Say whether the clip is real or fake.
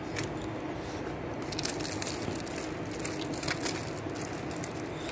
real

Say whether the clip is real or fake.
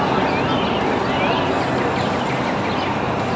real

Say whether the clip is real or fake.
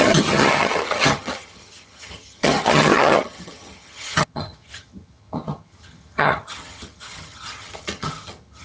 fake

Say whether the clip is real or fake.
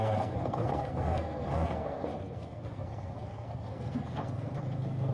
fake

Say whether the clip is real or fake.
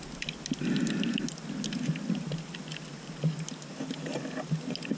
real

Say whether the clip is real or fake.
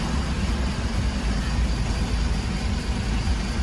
real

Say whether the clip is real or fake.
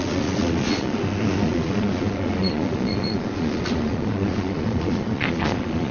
fake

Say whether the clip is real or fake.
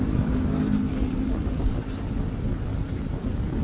real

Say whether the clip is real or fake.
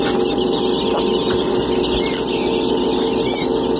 real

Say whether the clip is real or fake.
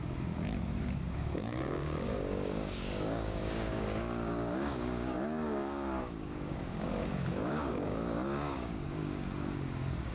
fake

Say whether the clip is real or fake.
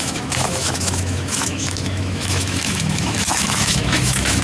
fake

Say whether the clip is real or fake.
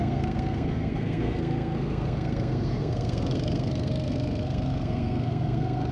fake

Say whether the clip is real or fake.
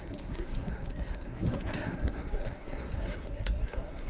fake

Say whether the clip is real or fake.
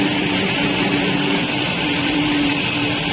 fake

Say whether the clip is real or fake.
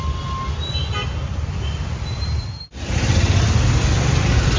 real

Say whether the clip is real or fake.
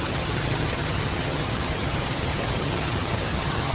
fake